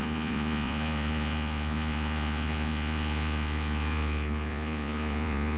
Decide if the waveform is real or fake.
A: fake